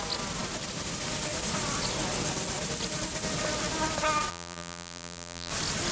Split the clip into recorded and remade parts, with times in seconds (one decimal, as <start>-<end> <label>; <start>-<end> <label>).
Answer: 0.0-4.3 recorded; 4.3-5.5 remade; 5.5-5.9 recorded